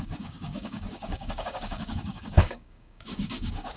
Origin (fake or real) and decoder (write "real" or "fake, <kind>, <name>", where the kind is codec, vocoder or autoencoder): fake, codec, DAC